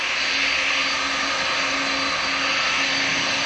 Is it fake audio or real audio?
real